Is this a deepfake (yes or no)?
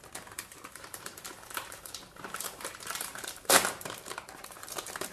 yes